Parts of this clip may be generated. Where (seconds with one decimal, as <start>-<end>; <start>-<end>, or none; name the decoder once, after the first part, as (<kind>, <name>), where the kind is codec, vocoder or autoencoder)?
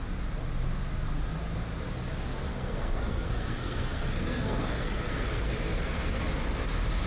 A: 2.5-6.2 (codec, SNAC)